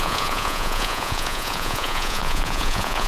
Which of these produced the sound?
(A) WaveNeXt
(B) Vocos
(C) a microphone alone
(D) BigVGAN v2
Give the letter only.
B